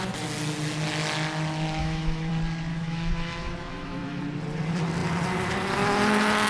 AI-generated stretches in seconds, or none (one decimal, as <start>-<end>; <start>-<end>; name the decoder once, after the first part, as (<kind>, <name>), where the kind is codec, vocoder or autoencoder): 1.8-2.3 (autoencoder, DAC-VAE); 2.7-4.2